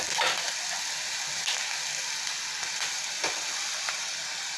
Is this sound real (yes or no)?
yes